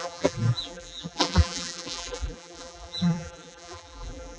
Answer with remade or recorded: remade